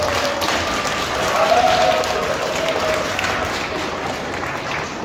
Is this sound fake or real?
real